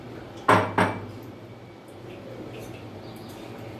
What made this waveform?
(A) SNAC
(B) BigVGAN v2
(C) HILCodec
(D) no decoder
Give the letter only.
D